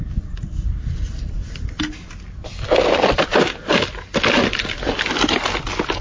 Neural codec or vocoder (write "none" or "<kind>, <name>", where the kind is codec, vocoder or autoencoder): none